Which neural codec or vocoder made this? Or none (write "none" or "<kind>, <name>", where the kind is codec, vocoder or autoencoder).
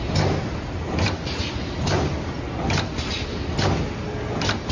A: none